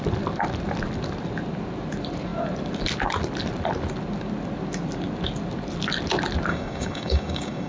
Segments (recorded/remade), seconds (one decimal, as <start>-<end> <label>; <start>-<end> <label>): 0.0-6.5 recorded; 6.5-7.7 remade